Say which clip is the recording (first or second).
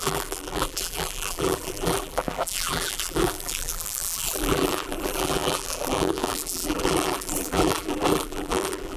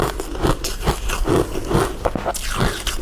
second